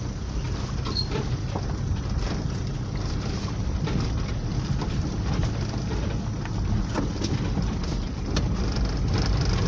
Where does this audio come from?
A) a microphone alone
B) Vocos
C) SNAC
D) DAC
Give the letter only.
A